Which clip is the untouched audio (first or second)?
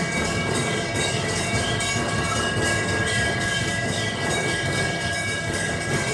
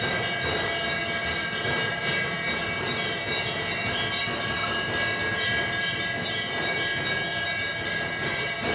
second